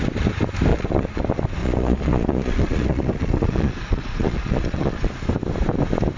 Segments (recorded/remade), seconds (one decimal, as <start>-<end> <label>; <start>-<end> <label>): 0.0-0.7 recorded; 0.7-1.2 remade; 1.2-1.6 recorded; 1.6-5.1 remade; 5.1-6.2 recorded